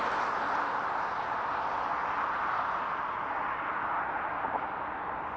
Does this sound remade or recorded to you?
recorded